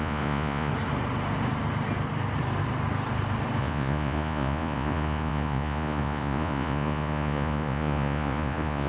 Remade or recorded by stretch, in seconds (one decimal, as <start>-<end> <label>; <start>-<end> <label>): 0.0-0.7 remade; 0.7-3.6 recorded; 3.6-8.9 remade